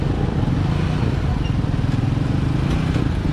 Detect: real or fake real